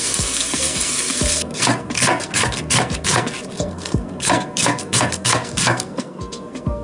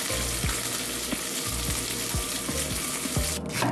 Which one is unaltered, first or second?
second